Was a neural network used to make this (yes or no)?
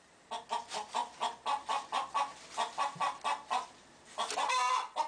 no